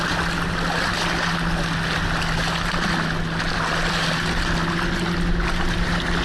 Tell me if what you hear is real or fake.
real